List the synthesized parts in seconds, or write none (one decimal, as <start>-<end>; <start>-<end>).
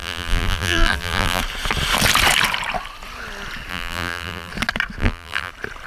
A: 0.0-1.4; 3.7-4.5; 5.0-5.5